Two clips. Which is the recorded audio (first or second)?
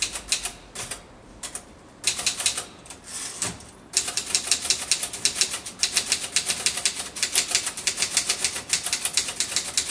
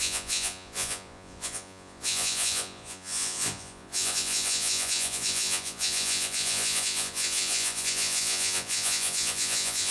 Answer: first